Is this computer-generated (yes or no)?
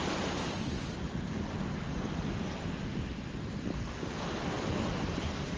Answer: no